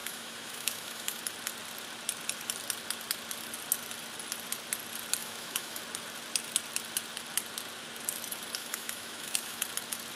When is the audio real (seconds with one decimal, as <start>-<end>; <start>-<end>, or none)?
1.2-5.2; 5.8-8.6; 9.6-10.2